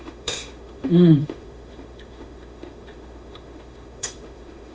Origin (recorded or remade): remade